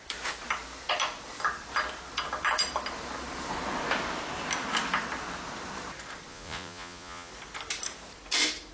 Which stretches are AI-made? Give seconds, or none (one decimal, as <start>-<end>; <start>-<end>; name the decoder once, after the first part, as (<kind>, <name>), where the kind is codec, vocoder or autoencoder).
6.3-7.3 (vocoder, Vocos)